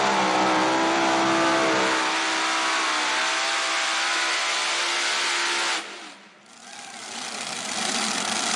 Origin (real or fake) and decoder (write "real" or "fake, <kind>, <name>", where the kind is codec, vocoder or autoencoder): real